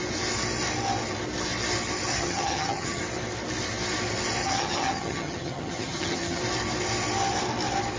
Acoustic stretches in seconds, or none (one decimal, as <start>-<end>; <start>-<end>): 0.0-2.1; 3.0-4.4; 6.4-8.0